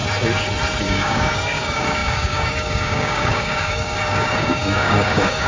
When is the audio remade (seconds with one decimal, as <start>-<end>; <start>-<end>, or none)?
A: 0.8-5.5